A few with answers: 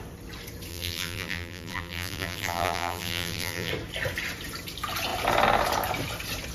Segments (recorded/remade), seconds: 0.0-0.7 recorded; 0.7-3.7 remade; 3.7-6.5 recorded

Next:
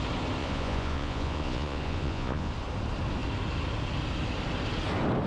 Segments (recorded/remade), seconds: 0.0-0.4 recorded; 0.4-2.5 remade; 2.5-5.3 recorded

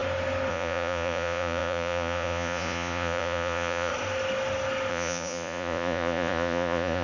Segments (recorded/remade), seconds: 0.0-0.5 recorded; 0.5-3.9 remade; 3.9-4.9 recorded; 4.9-7.0 remade

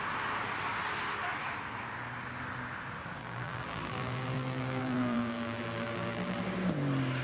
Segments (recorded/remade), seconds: 0.0-3.2 recorded; 3.2-6.4 remade; 6.4-7.2 recorded

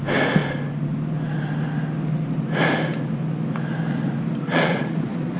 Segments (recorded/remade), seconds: 0.0-4.5 recorded; 4.5-5.4 remade